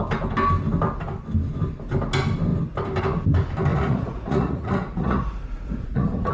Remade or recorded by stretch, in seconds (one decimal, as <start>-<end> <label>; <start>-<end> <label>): 0.0-3.7 recorded; 3.7-6.3 remade